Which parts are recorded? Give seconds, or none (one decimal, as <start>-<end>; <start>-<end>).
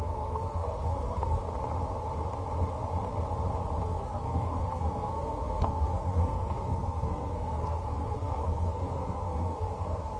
1.4-3.8